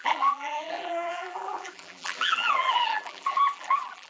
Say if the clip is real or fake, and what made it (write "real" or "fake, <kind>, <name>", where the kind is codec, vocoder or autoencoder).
fake, vocoder, BigVGAN v2